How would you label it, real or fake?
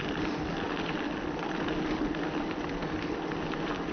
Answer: real